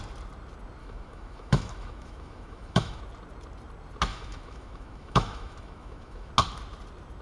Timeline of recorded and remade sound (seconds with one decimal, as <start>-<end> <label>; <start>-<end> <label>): 0.0-0.8 recorded; 0.8-3.0 remade; 3.0-4.1 recorded; 4.1-6.3 remade; 6.3-7.2 recorded